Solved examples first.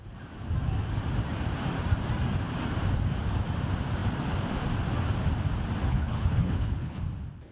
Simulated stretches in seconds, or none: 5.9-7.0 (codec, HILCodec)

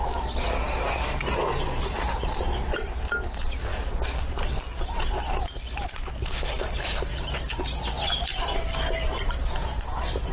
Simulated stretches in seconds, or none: none

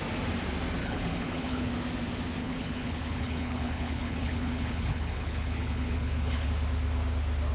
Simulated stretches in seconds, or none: 0.8-1.7 (codec, HILCodec); 2.4-6.5

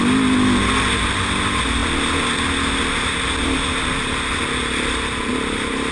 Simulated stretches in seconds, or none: none

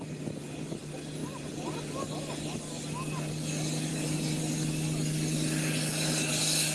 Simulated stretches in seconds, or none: none